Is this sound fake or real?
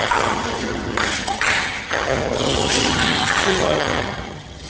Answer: fake